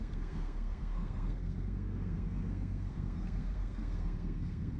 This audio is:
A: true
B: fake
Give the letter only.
B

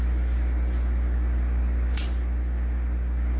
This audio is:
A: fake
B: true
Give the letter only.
B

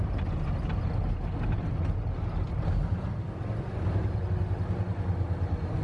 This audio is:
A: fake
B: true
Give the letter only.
B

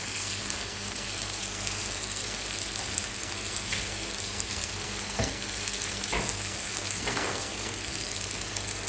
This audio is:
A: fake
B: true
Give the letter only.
A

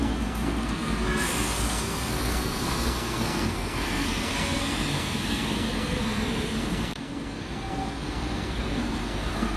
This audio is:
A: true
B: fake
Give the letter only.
B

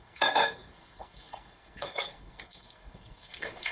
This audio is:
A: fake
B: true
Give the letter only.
A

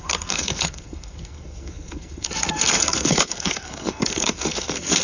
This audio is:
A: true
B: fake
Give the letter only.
B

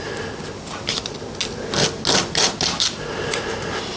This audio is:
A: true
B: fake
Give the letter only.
A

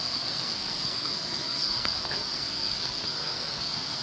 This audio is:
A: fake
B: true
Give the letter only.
A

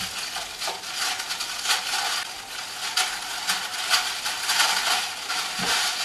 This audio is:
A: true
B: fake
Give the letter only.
A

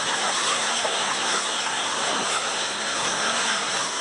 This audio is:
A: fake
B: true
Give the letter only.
A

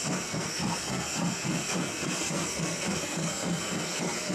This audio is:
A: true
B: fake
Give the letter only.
B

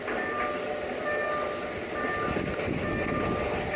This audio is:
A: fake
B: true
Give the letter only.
B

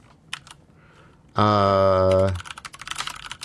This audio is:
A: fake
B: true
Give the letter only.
B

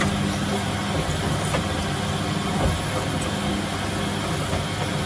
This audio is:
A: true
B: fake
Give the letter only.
A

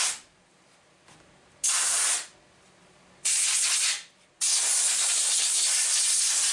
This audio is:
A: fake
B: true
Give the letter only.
B